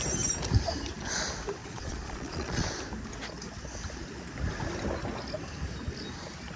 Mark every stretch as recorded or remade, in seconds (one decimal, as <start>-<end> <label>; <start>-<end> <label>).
0.0-1.6 recorded; 1.6-2.7 remade; 2.7-6.6 recorded